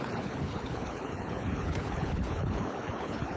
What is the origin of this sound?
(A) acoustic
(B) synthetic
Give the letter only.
B